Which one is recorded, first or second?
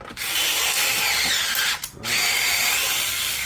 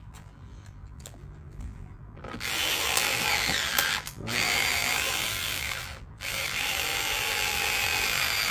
first